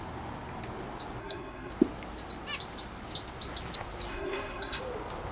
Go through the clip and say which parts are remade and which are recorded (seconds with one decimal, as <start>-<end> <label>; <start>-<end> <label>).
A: 0.0-1.2 recorded; 1.2-1.7 remade; 1.7-4.1 recorded; 4.1-4.8 remade; 4.8-5.3 recorded